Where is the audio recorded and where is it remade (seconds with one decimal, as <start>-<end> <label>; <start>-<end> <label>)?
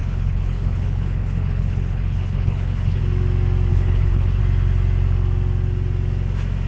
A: 0.0-3.0 remade; 3.0-3.7 recorded; 3.7-4.4 remade; 4.4-6.7 recorded